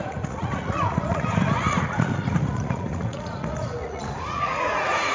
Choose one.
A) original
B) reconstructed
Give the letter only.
B